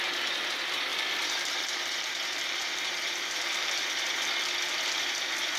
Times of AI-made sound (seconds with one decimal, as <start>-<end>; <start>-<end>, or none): 0.9-3.9

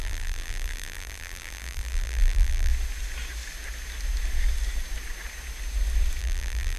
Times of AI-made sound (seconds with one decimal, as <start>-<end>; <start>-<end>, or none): 0.0-2.7; 6.2-6.8

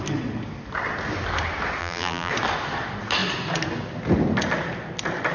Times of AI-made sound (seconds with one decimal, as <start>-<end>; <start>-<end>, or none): 1.8-2.3

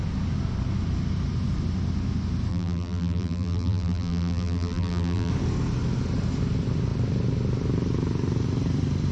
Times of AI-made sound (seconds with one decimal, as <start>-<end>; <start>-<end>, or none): 2.5-5.3

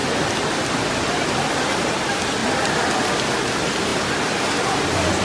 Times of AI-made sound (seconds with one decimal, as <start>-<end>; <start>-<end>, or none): 3.9-4.8

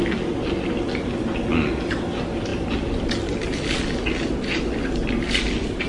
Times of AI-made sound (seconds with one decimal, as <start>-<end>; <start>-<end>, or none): none